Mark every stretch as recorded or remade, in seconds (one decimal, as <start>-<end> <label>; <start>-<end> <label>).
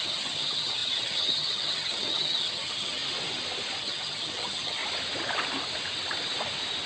0.0-3.0 remade; 3.0-3.8 recorded; 3.8-4.8 remade; 4.8-6.9 recorded